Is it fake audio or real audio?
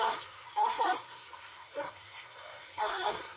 fake